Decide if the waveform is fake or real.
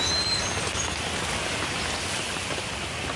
real